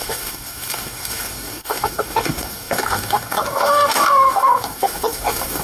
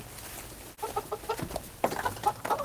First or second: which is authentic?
second